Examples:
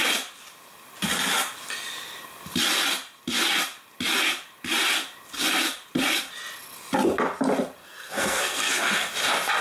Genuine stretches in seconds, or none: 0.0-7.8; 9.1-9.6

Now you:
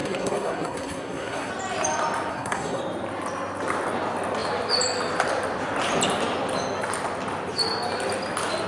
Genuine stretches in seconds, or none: 1.5-2.3; 2.8-8.7

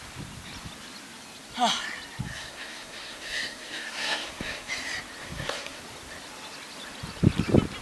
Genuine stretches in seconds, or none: 0.0-2.3; 4.7-5.2; 5.8-7.8